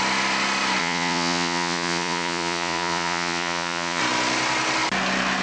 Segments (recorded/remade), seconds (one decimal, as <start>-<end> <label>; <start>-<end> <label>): 0.0-0.8 recorded; 0.8-4.0 remade; 4.0-5.4 recorded